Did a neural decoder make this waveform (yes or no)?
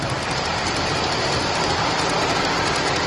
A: no